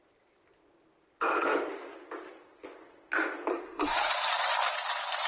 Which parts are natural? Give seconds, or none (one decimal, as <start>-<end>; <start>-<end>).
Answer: 0.0-3.5; 4.1-5.3